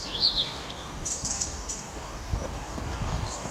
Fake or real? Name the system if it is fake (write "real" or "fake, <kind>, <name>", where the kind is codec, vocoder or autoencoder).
fake, codec, DAC